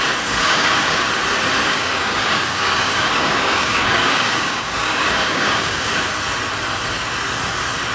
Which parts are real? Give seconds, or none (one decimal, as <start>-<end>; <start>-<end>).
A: 0.0-0.4; 1.1-1.6; 5.9-7.9